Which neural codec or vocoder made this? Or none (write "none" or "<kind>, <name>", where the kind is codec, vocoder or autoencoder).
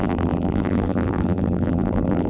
vocoder, BigVGAN v2